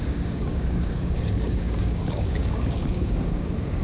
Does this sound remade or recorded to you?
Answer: remade